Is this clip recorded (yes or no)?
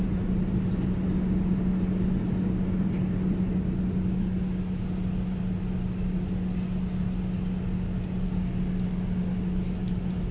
yes